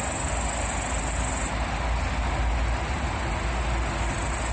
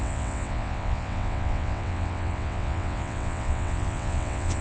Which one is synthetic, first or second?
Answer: second